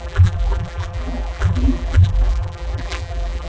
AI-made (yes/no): yes